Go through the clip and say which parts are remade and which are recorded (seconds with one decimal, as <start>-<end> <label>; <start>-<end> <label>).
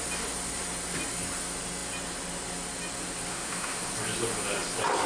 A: 0.0-3.3 recorded; 3.3-3.9 remade; 3.9-5.1 recorded